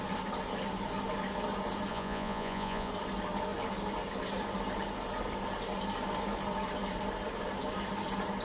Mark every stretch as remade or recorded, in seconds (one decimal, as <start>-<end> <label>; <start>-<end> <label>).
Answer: 0.0-1.9 recorded; 1.9-2.9 remade; 2.9-8.4 recorded